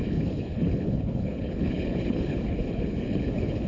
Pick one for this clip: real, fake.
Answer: fake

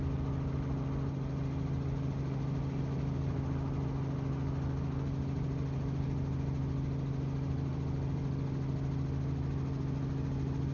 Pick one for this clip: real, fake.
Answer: real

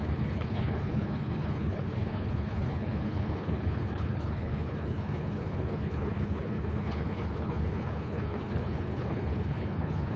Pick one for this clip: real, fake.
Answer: fake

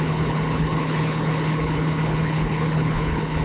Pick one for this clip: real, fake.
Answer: fake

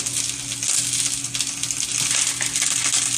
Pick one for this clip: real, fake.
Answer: real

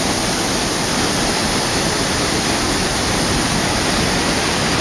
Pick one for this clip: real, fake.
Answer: real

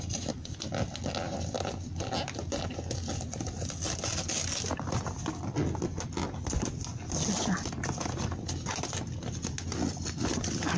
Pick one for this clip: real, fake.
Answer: real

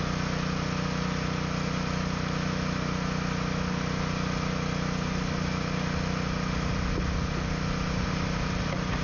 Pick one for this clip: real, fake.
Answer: real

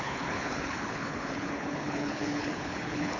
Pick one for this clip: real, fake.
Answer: fake